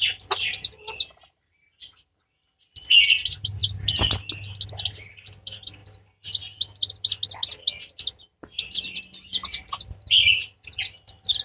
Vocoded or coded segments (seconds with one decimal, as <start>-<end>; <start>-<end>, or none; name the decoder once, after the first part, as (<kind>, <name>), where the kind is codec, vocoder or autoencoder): none